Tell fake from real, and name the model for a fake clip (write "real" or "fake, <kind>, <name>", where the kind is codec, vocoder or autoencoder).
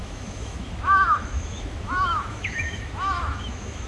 fake, autoencoder, DAC-VAE